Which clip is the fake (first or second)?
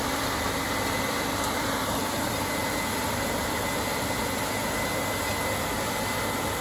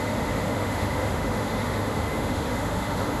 second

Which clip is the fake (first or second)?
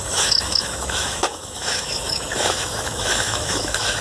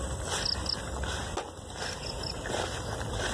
first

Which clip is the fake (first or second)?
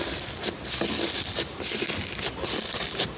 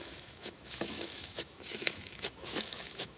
second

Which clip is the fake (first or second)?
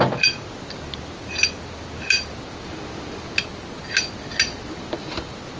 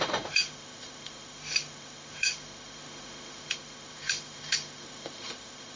second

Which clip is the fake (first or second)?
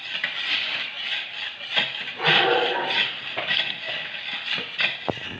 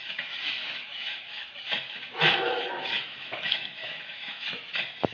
second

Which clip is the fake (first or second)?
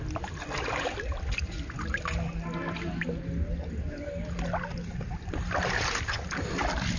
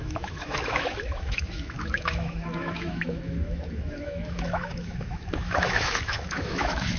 second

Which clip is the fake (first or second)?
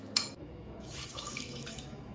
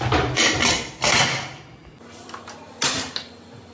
first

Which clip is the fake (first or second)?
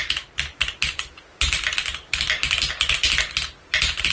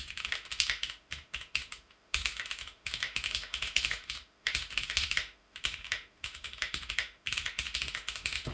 second